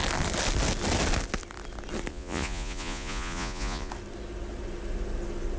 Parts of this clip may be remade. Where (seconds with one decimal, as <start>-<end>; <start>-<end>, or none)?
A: 2.1-3.9